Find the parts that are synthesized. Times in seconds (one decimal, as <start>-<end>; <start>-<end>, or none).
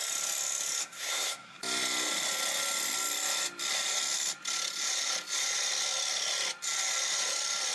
0.8-1.6